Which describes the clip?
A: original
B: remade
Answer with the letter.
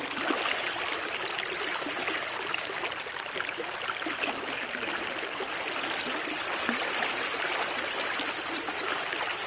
A